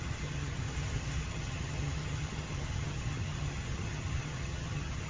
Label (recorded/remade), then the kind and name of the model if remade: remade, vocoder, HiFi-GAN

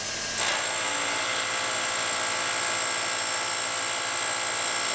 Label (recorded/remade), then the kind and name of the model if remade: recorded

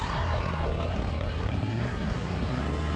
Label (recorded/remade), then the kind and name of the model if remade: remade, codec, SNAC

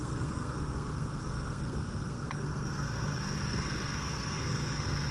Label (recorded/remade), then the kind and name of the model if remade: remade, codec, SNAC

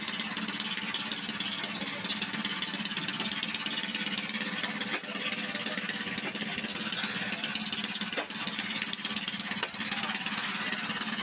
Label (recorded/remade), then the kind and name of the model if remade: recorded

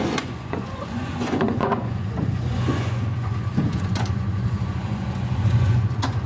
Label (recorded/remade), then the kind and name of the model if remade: remade, vocoder, Vocos